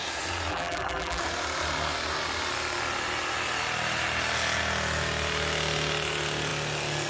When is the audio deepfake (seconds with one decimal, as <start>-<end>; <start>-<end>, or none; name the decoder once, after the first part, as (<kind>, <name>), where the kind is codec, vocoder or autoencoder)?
0.5-1.2 (vocoder, BigVGAN v2)